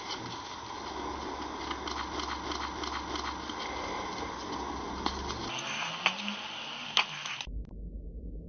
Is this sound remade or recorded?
recorded